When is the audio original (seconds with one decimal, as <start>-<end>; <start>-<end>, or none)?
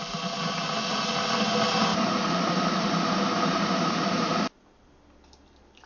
0.0-1.9; 4.3-5.9